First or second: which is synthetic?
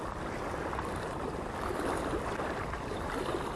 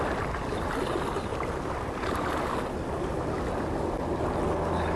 first